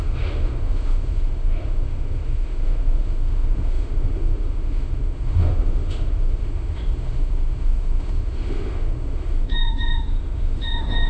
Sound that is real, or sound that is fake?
fake